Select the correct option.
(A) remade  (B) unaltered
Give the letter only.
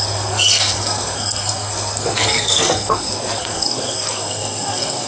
A